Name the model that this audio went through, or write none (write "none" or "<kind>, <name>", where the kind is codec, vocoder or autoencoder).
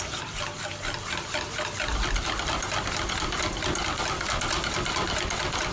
none